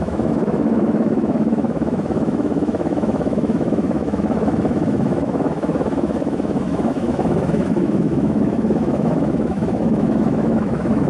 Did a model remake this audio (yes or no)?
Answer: yes